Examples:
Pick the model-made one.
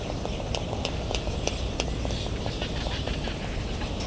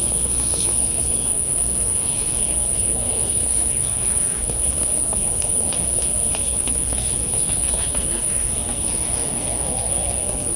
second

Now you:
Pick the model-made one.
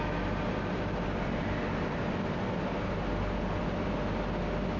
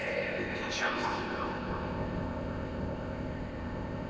second